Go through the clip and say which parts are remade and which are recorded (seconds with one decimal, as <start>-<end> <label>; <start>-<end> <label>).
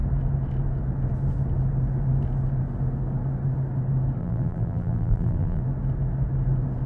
0.0-4.2 recorded; 4.2-5.6 remade; 5.6-6.9 recorded